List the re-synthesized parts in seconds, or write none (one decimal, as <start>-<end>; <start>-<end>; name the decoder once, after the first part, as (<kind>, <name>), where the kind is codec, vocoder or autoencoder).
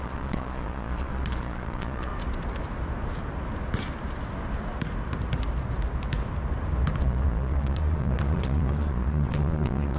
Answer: 0.0-2.1 (vocoder, Vocos); 7.0-10.0